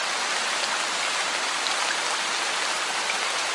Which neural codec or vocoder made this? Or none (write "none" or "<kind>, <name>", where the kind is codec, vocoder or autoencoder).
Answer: none